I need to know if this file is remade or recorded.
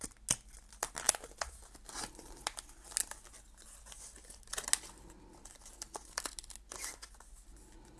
recorded